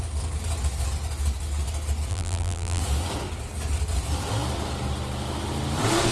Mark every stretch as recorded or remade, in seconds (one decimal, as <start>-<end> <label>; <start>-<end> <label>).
0.0-2.1 recorded; 2.1-2.8 remade; 2.8-6.1 recorded